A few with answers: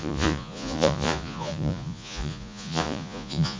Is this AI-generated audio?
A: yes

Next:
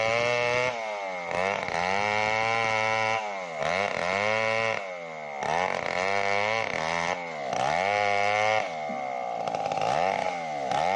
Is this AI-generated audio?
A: no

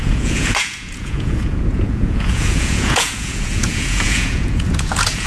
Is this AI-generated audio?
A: yes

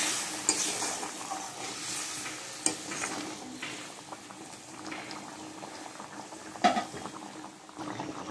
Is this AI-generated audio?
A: no